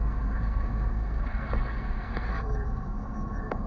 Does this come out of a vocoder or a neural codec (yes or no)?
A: yes